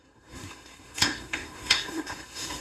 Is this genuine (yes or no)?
no